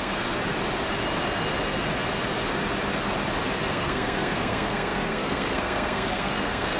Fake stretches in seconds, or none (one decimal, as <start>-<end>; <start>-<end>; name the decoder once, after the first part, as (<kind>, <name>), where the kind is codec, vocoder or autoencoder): 0.0-0.4 (codec, SNAC); 3.7-6.8